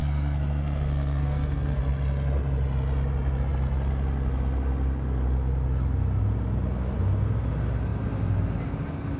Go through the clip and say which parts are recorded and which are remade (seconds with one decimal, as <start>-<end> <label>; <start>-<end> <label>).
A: 0.0-1.8 remade; 1.8-9.2 recorded